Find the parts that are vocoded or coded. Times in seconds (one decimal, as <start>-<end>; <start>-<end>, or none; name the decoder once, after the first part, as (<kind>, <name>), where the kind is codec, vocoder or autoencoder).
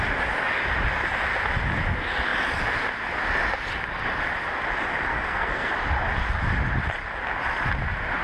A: 5.1-5.7 (codec, SNAC)